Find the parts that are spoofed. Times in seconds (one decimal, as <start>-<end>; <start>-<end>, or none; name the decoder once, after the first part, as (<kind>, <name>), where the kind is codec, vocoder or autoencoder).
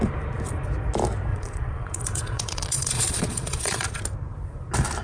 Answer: 1.3-4.0 (vocoder, Vocos)